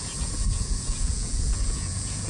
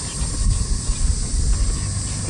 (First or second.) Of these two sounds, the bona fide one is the second